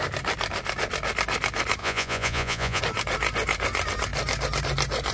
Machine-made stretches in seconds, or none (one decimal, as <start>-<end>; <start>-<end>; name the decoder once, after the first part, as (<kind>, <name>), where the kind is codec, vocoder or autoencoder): 1.8-2.8 (vocoder, Vocos)